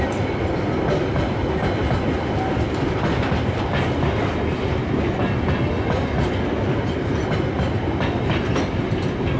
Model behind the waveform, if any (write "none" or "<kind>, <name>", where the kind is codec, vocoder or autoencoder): none